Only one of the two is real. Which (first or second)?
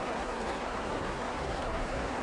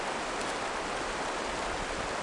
second